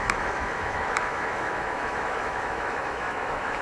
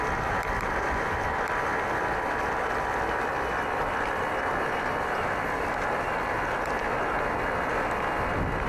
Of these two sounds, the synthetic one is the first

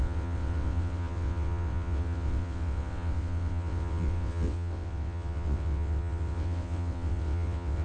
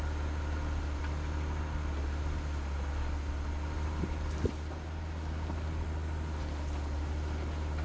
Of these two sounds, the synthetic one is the first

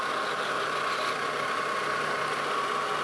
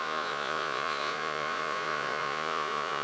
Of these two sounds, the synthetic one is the second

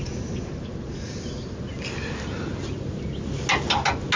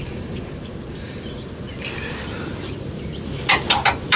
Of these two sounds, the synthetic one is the second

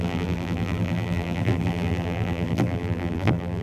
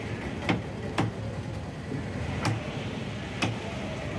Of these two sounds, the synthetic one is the first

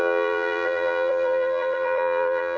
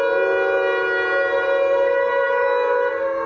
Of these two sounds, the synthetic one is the first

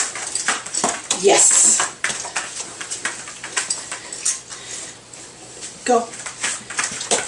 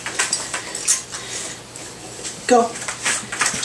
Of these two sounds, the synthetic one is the first